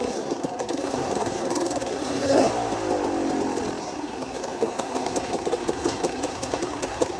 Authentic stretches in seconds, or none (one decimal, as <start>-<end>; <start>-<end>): 2.5-3.8